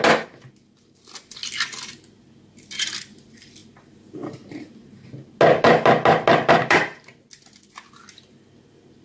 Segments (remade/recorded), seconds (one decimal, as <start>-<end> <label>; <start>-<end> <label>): 0.0-9.0 recorded